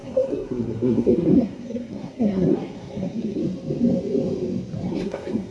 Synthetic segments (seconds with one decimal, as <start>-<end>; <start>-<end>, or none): 0.0-3.4; 4.9-5.5